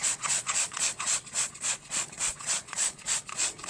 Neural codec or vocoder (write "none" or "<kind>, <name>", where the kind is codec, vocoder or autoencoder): vocoder, Vocos